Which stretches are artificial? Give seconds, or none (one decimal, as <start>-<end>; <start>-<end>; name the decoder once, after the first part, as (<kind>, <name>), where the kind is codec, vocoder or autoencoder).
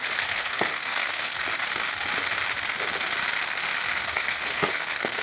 0.0-1.4 (codec, SNAC); 4.0-5.2